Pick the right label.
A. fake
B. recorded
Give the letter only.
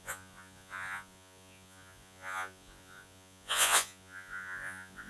A